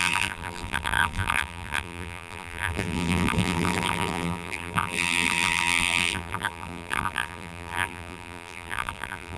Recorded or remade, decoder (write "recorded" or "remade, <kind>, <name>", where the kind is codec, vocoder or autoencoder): remade, vocoder, BigVGAN v2